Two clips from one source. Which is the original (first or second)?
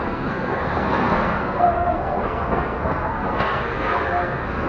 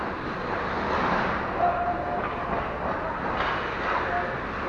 second